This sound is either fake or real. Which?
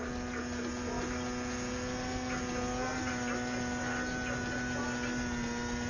real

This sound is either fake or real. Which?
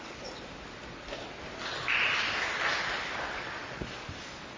real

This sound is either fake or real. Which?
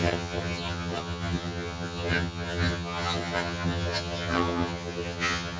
fake